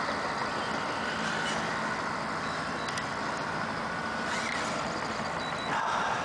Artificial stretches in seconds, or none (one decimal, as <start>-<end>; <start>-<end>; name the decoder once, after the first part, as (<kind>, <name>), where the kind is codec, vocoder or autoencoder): none